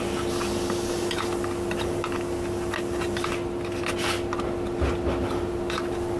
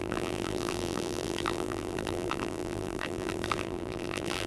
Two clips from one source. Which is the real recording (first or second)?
first